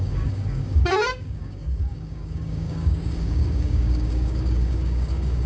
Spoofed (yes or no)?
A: yes